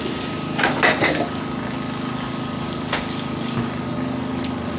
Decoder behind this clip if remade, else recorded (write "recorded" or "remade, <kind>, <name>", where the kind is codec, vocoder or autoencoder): recorded